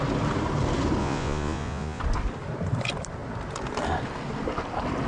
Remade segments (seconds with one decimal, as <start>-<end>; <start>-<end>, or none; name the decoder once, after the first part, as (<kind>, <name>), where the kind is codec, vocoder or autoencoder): 1.0-2.0 (vocoder, Vocos)